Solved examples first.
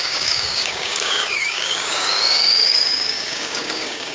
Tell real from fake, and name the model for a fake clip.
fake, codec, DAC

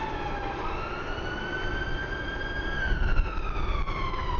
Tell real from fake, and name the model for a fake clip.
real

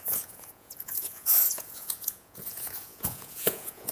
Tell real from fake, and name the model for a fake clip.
fake, vocoder, Vocos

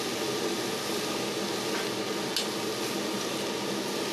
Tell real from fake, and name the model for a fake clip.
real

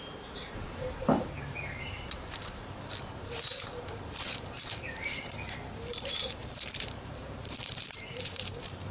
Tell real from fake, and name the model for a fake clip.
fake, vocoder, BigVGAN v2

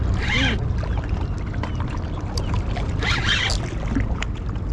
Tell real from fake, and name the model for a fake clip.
real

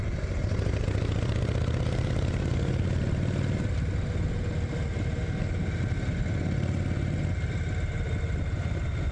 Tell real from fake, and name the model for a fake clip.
real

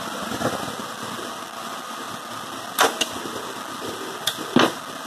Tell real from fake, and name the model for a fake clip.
real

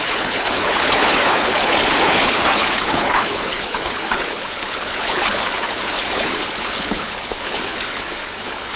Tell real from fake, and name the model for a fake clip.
fake, codec, HILCodec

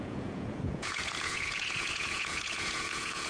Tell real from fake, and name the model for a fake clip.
fake, vocoder, Vocos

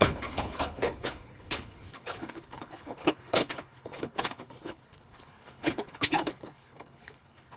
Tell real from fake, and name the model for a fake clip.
fake, codec, HILCodec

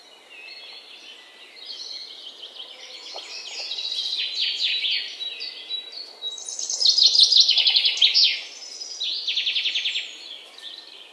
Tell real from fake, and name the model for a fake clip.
real